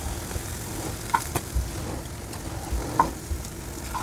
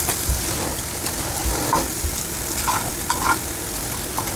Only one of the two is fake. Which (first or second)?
second